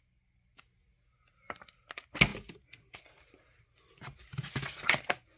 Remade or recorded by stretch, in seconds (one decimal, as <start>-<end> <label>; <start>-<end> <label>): 0.0-5.4 recorded